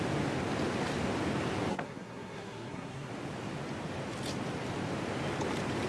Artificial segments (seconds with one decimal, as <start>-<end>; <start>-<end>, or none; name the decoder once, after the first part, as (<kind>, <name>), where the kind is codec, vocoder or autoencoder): 1.7-3.1 (codec, SNAC)